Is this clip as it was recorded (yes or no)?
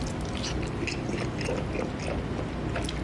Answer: yes